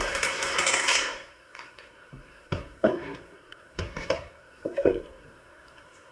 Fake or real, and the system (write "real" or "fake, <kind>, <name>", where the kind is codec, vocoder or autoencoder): fake, codec, SNAC